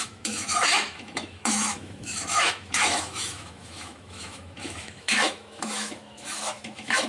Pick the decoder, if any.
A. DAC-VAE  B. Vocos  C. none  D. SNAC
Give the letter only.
A